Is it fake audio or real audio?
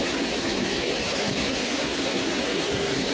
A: fake